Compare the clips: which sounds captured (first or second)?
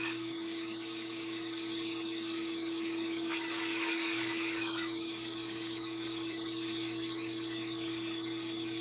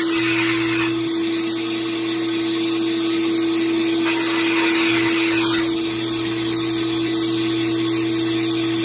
second